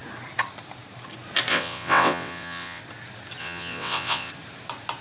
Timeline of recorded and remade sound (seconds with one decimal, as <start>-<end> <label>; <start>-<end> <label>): 0.0-1.5 recorded; 1.5-2.8 remade; 2.8-3.4 recorded; 3.4-4.3 remade; 4.3-5.0 recorded